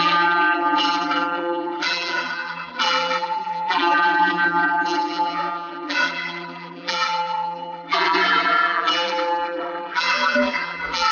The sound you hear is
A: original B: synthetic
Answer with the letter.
B